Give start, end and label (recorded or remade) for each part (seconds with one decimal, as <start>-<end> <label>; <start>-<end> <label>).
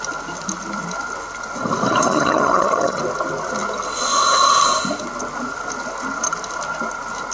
0.0-2.0 recorded; 2.0-3.0 remade; 3.0-7.3 recorded